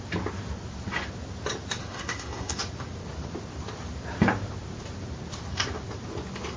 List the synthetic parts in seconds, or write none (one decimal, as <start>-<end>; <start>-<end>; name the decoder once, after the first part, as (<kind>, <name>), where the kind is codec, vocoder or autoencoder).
1.8-2.6 (codec, SNAC)